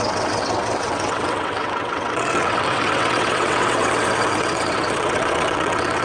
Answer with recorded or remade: remade